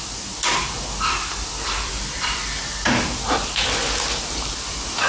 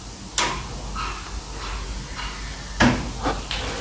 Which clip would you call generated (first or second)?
first